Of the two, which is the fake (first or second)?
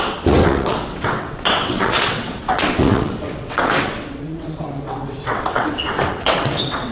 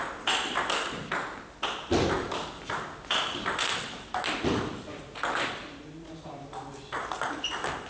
first